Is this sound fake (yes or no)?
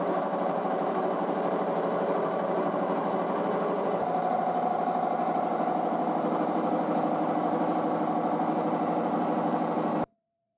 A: yes